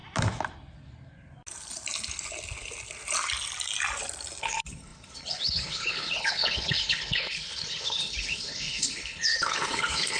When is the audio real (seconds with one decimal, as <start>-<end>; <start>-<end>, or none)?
0.0-4.4